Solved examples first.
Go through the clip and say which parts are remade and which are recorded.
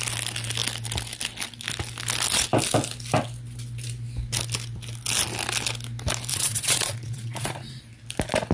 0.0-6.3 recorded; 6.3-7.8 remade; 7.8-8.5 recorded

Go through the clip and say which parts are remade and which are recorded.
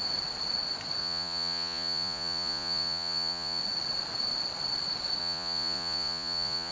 0.0-1.0 recorded; 1.0-3.6 remade; 3.6-5.2 recorded; 5.2-6.7 remade